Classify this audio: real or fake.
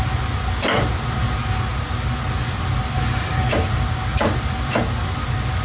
real